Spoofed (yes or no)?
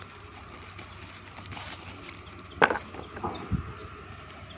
no